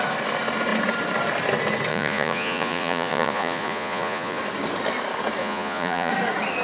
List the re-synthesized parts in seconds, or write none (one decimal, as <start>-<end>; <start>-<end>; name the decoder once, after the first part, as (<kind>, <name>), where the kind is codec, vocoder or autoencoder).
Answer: 1.9-4.4 (vocoder, Vocos); 5.4-6.1